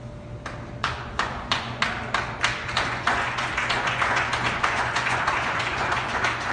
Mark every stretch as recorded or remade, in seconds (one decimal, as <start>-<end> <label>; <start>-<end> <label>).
0.0-0.8 recorded; 0.8-1.8 remade; 1.8-2.5 recorded; 2.5-6.5 remade